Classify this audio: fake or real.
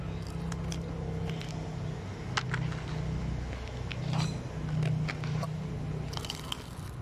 real